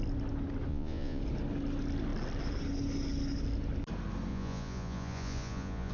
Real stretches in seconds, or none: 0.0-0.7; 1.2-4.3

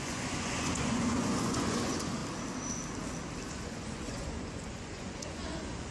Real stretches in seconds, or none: 2.2-3.5

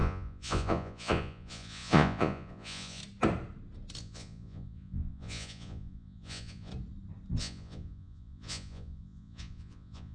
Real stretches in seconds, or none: 3.0-4.0; 6.7-7.4

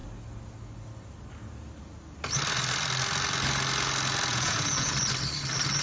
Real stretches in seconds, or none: 0.0-4.3; 4.9-5.8

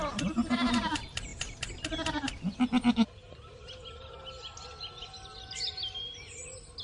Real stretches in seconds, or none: 0.0-6.8

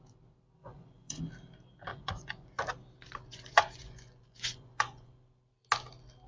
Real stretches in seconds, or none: 0.0-0.6; 1.2-1.9; 2.5-3.3; 5.1-6.3